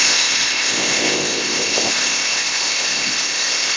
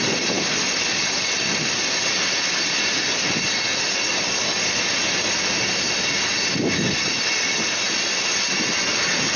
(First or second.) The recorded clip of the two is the second